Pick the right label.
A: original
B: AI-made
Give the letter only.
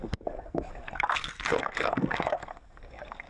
B